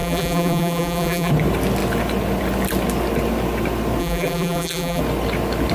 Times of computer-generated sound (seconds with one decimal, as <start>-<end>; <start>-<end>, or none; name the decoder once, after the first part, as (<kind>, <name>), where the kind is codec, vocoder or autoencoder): 0.0-1.3 (vocoder, BigVGAN v2); 4.0-5.0